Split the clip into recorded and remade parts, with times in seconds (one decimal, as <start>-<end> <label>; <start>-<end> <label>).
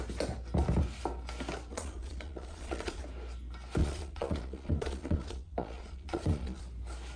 0.0-1.7 recorded; 1.7-3.0 remade; 3.0-3.8 recorded; 3.8-6.6 remade; 6.6-7.2 recorded